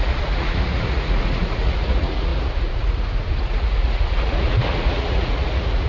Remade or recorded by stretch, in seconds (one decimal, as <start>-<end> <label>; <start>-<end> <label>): 0.0-5.9 remade